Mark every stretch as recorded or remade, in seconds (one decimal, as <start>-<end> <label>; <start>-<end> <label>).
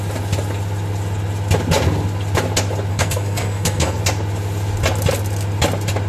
0.0-2.9 recorded; 2.9-4.0 remade; 4.0-6.1 recorded